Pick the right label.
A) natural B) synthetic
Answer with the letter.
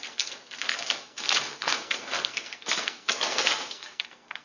B